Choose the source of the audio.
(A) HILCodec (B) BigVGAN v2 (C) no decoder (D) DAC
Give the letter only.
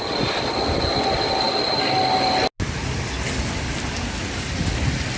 C